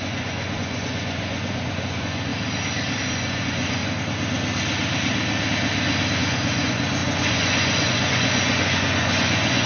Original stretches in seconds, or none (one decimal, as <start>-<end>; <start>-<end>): 2.3-3.0; 3.8-6.2